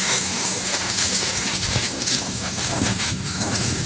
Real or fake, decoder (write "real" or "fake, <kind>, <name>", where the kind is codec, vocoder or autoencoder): fake, codec, DAC